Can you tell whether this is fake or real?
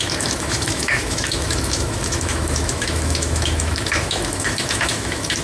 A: fake